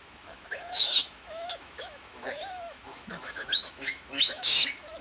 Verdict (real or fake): fake